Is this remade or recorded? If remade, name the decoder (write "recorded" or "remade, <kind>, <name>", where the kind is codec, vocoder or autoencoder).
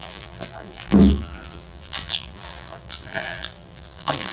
remade, vocoder, BigVGAN v2